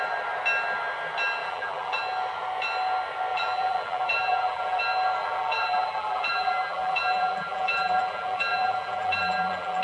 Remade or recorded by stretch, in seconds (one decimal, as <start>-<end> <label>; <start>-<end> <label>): 0.0-1.4 recorded; 1.4-2.0 remade; 2.0-3.3 recorded; 3.3-4.8 remade; 4.8-5.2 recorded; 5.2-9.8 remade